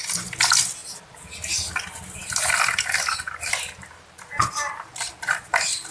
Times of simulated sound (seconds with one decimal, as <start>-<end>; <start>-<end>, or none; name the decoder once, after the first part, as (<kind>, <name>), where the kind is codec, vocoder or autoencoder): none